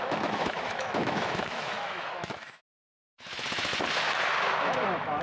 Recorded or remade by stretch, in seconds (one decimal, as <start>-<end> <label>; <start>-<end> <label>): 0.0-3.7 remade; 3.7-4.6 recorded; 4.6-5.2 remade